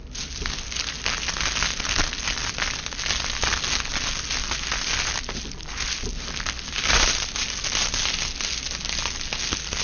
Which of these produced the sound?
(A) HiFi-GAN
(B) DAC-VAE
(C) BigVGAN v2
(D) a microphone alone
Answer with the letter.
D